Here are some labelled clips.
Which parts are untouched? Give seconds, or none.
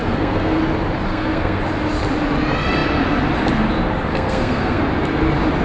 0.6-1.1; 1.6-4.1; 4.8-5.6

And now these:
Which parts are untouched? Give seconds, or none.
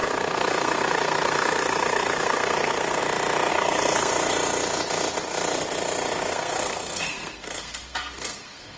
3.0-3.5; 4.1-6.3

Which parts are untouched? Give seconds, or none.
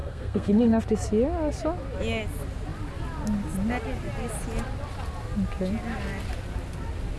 0.8-7.2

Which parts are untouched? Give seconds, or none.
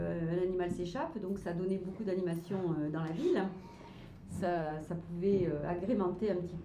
0.0-3.9; 4.7-6.6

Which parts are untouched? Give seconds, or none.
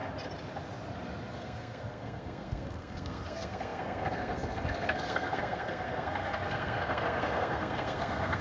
0.0-1.3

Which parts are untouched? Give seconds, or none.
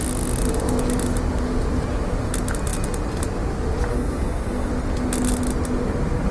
0.0-3.9; 4.7-6.3